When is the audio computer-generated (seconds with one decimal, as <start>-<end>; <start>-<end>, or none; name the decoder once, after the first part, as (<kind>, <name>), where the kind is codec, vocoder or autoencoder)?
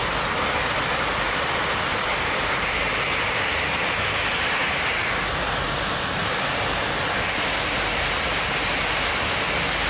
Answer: 1.9-3.7 (vocoder, BigVGAN v2)